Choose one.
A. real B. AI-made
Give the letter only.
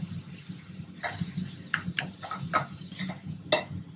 A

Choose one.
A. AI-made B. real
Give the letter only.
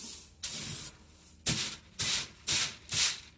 B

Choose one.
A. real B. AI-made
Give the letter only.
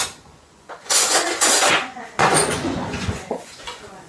B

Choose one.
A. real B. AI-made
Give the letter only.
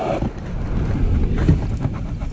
A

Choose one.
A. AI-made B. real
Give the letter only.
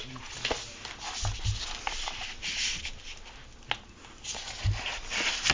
B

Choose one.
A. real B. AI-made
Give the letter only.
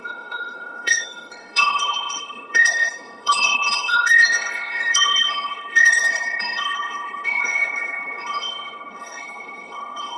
B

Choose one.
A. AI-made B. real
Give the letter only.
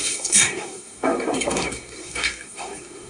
A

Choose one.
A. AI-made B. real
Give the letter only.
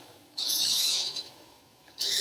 A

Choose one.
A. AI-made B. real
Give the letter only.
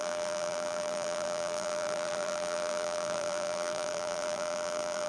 A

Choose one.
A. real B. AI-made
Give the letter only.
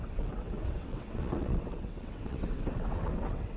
B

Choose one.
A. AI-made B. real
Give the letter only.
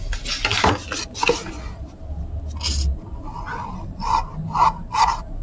B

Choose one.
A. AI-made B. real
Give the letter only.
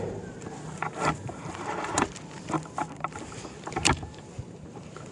A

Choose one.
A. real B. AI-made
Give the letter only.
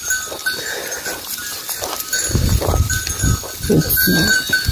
A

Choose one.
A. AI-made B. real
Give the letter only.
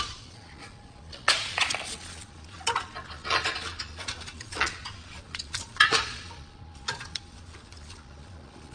A